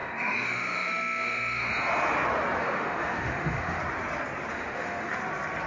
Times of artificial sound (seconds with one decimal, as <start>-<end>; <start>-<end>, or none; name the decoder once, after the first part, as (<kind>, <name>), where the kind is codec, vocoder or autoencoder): 0.0-1.7 (autoencoder, DAC-VAE); 2.6-3.8; 4.5-5.1